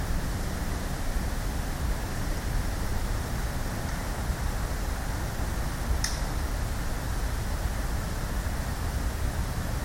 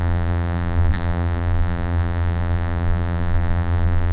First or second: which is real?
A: first